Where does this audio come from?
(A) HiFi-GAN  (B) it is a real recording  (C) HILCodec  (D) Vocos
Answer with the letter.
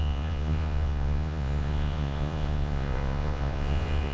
D